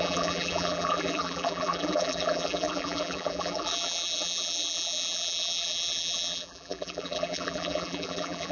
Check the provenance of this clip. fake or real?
fake